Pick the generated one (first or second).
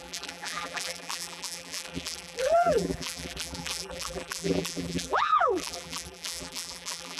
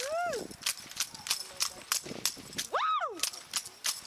first